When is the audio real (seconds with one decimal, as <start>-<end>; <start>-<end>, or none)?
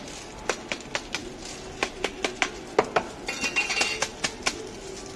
0.0-5.2